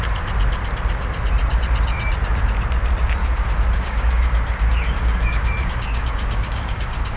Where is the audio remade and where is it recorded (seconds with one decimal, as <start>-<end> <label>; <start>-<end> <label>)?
0.0-3.2 recorded; 3.2-7.2 remade